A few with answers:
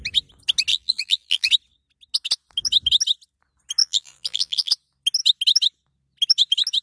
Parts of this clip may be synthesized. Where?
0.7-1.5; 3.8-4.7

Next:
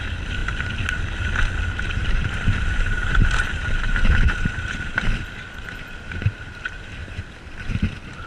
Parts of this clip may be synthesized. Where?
2.0-4.0; 7.0-7.8

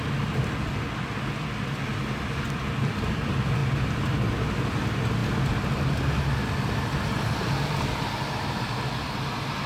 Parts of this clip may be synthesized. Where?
none

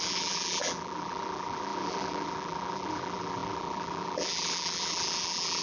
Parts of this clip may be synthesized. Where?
0.0-5.6

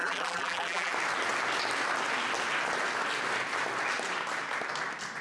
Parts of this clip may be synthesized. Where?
0.0-0.9

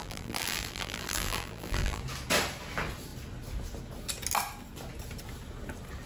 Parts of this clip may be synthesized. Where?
0.0-2.0

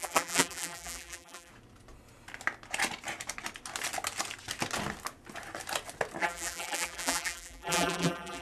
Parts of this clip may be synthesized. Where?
0.0-1.5; 6.2-8.4